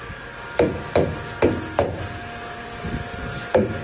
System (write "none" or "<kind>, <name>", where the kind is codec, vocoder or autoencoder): none